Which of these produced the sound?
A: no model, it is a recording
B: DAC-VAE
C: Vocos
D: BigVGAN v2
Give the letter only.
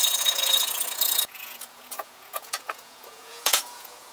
C